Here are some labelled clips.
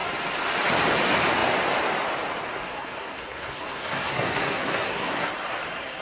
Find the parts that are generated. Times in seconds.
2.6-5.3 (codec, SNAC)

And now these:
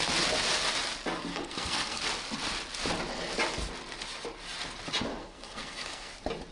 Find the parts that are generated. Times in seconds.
1.3-2.0 (codec, SNAC); 5.2-6.1

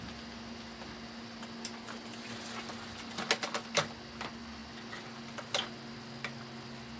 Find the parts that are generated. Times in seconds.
none